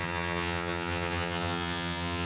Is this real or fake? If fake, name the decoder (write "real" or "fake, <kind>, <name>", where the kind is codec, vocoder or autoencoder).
fake, vocoder, HiFi-GAN